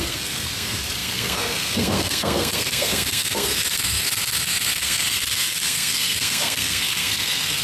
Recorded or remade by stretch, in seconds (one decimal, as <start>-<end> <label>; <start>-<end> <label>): 0.0-7.6 remade